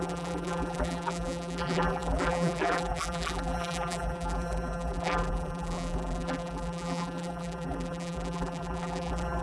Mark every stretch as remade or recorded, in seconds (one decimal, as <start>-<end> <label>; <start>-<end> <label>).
0.0-9.4 remade